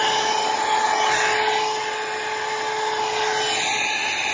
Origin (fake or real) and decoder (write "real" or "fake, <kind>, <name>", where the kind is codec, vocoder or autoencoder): real